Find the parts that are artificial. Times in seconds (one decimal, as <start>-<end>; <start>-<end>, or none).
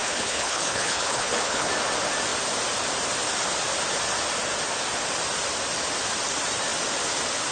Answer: 0.0-1.7